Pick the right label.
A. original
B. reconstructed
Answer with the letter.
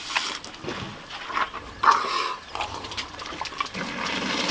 A